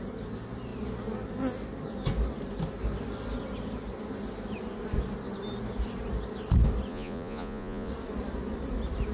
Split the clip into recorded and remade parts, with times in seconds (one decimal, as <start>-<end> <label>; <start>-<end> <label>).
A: 0.0-6.9 recorded; 6.9-7.9 remade; 7.9-9.1 recorded